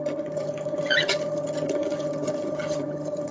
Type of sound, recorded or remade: remade